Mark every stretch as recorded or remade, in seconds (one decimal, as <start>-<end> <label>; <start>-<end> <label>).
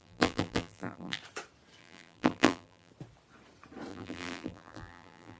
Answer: 0.0-1.2 remade; 1.2-1.8 recorded; 1.8-2.9 remade; 2.9-3.9 recorded; 3.9-5.4 remade